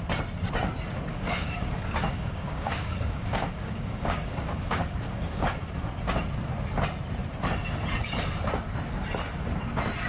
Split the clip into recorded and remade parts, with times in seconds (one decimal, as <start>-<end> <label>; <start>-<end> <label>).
0.0-1.1 recorded; 1.1-5.6 remade; 5.6-10.1 recorded